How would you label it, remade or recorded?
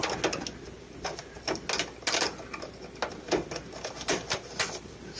recorded